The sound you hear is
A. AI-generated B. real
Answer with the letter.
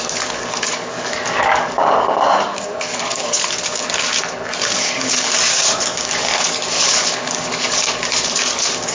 A